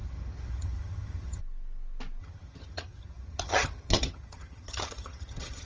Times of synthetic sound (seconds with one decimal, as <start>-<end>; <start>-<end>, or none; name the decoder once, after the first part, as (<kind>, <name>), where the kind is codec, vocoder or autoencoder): 0.0-1.4 (vocoder, HiFi-GAN); 2.2-5.7